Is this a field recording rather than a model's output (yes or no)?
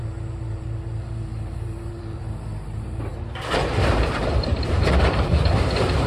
no